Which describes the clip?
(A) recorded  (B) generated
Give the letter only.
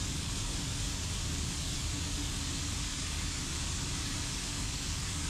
B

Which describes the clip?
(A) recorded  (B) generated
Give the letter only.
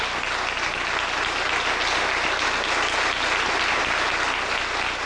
A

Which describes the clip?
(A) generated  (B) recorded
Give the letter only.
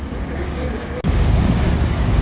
A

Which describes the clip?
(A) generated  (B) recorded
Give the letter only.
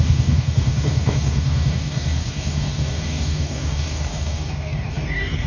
A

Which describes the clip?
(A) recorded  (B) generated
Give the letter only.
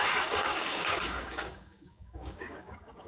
B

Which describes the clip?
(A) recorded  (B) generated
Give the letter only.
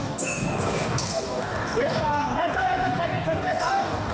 B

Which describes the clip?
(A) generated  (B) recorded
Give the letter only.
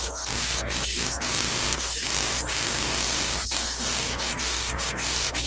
A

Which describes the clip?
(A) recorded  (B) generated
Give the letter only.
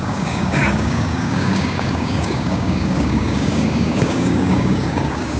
B